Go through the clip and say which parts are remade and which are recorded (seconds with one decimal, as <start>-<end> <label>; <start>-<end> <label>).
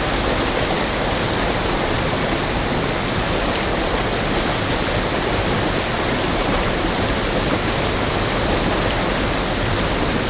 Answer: 0.0-6.4 recorded; 6.4-7.0 remade; 7.0-10.3 recorded